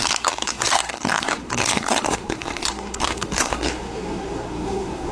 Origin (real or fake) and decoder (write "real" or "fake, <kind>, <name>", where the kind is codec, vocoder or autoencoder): fake, codec, SNAC